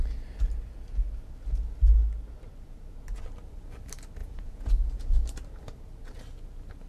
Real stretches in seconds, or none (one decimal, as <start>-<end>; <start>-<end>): 0.0-4.2; 5.2-6.9